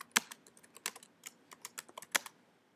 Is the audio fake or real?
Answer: real